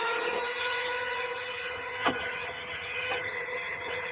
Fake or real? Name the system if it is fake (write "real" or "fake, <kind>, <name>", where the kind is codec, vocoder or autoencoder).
fake, vocoder, HiFi-GAN